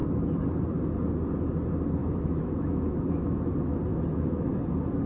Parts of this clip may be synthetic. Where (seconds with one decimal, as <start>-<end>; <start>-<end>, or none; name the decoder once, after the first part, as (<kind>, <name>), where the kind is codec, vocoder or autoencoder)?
2.0-3.5 (autoencoder, DAC-VAE); 3.9-4.5